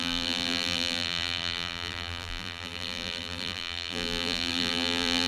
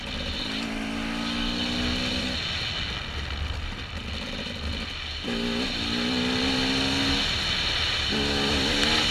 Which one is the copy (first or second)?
first